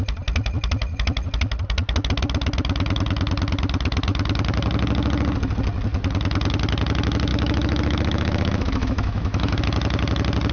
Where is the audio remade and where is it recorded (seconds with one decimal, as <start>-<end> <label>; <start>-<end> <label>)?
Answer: 0.0-7.3 recorded; 7.3-9.6 remade; 9.6-10.5 recorded